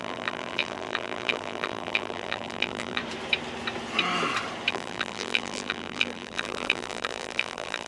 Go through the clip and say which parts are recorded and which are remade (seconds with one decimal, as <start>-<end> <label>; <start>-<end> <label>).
0.0-3.0 remade; 3.0-4.7 recorded; 4.7-7.9 remade